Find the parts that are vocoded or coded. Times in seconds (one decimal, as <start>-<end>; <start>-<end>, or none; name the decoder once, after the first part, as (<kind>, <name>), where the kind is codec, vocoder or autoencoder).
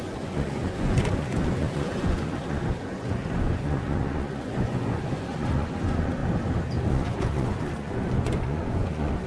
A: 0.0-6.2 (vocoder, Vocos); 6.9-9.3